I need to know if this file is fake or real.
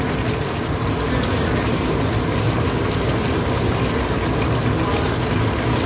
real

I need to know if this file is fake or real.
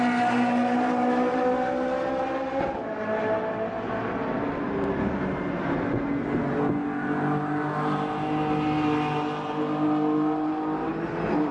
real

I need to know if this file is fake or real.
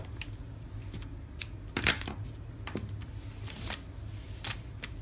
real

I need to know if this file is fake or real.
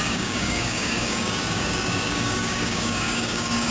fake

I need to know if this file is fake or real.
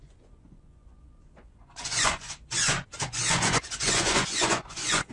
fake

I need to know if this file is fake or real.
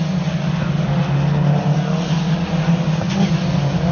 real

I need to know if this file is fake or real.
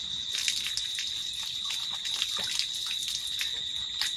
real